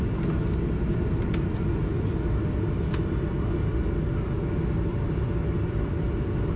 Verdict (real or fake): real